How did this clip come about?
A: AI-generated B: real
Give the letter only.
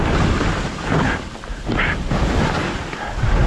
B